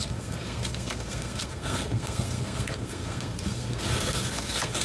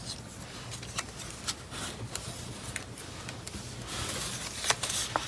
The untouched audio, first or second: second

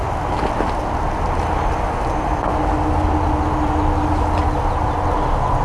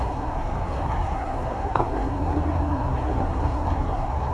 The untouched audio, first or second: first